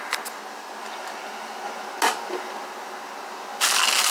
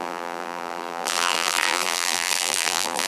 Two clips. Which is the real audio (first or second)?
first